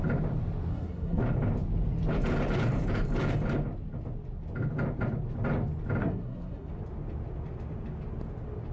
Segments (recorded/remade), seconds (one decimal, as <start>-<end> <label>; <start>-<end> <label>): 0.0-0.7 recorded; 0.7-1.2 remade; 1.2-6.0 recorded; 6.0-6.7 remade; 6.7-8.7 recorded